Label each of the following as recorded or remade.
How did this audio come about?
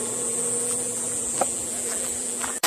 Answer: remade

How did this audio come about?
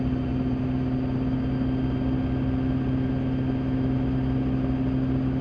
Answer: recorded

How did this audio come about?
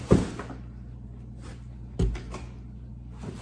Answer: recorded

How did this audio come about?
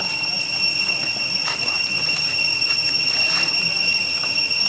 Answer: recorded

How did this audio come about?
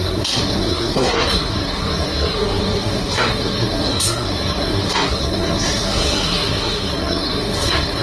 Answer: remade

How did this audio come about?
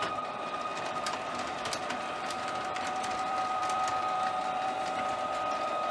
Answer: remade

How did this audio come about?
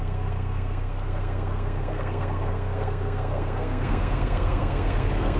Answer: remade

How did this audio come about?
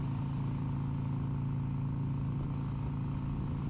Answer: recorded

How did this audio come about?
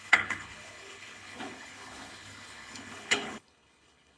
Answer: remade